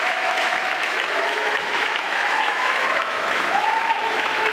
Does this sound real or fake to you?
fake